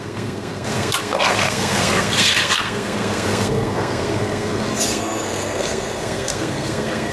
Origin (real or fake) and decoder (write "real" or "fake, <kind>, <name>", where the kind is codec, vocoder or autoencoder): fake, codec, SNAC